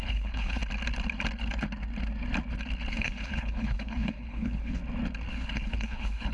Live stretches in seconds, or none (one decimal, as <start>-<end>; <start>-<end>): 0.6-2.9; 4.8-5.3